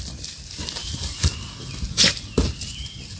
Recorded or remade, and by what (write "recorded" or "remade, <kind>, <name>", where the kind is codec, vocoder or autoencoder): recorded